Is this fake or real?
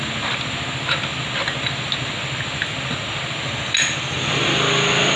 real